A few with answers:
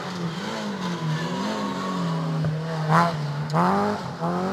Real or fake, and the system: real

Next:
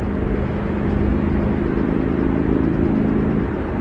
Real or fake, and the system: real